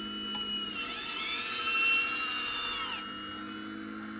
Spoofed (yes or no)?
no